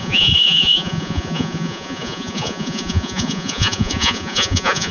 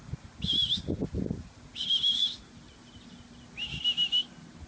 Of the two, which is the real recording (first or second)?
second